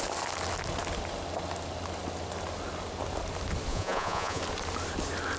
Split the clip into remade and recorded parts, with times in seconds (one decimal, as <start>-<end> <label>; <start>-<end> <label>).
0.0-3.7 recorded; 3.7-4.4 remade; 4.4-5.4 recorded